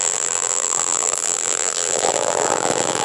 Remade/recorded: remade